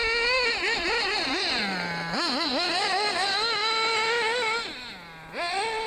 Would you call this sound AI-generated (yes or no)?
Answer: no